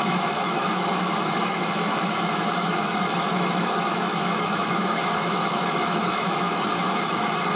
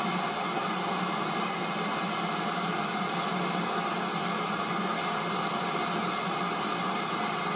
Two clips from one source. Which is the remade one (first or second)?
first